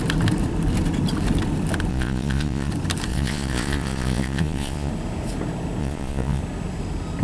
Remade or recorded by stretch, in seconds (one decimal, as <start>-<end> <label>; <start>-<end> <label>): 0.0-1.9 recorded; 1.9-2.7 remade; 2.7-3.1 recorded; 3.1-4.9 remade; 4.9-5.8 recorded; 5.8-6.4 remade; 6.4-7.2 recorded

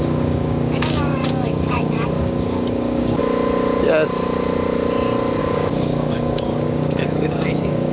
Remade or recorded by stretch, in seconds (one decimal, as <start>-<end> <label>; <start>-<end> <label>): 0.0-3.2 remade; 3.2-5.4 recorded; 5.4-7.9 remade

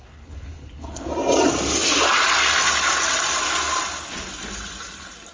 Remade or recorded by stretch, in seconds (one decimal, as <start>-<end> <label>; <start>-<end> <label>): 0.0-1.1 remade; 1.1-5.3 recorded

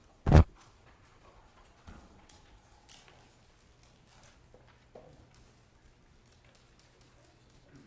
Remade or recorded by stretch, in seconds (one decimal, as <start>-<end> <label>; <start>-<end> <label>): 0.0-2.8 remade; 2.8-7.9 recorded

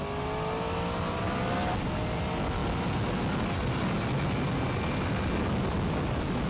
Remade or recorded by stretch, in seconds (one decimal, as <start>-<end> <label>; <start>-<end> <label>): 0.0-6.5 recorded

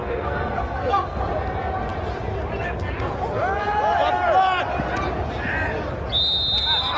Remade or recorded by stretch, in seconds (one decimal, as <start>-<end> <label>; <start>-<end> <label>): 0.0-1.2 remade; 1.2-7.0 recorded